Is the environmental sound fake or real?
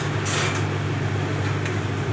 real